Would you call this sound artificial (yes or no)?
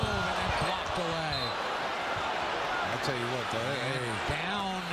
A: no